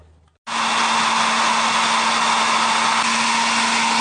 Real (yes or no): yes